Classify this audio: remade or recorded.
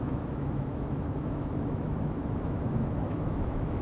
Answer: remade